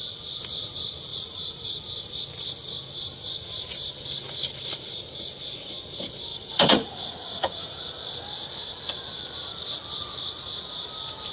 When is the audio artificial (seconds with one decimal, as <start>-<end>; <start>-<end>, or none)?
1.1-1.8; 6.3-7.8